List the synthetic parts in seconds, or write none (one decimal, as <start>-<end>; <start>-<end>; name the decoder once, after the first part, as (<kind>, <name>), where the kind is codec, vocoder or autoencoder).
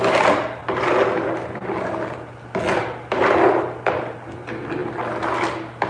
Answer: none